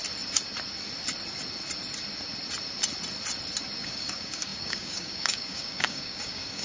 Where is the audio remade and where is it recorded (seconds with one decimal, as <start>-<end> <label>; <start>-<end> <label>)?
0.0-3.8 recorded; 3.8-6.6 remade